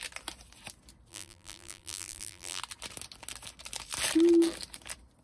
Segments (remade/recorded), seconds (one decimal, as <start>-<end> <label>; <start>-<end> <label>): 0.0-1.1 recorded; 1.1-2.6 remade; 2.6-5.2 recorded